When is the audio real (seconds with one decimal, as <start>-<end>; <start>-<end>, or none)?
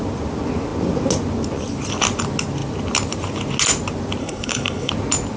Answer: 0.0-4.2; 4.9-5.4